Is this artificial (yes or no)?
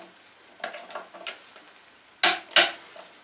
no